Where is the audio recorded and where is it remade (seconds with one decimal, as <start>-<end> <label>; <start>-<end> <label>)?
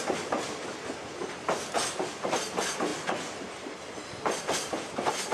0.0-5.3 recorded